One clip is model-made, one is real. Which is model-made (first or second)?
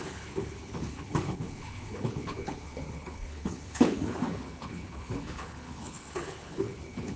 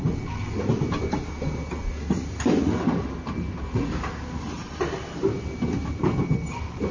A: first